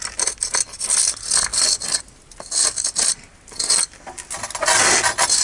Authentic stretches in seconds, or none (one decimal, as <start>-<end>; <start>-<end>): 0.0-5.4